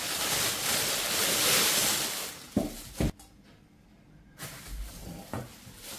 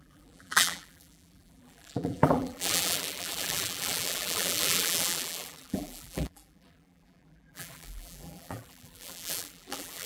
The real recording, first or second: first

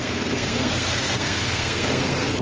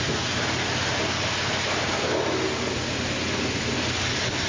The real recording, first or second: second